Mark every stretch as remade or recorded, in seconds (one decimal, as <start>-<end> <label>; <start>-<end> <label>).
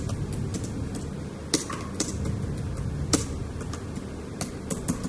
0.0-5.1 recorded